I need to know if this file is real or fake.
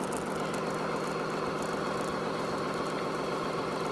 real